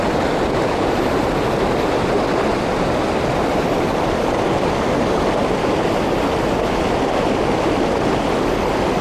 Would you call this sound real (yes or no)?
yes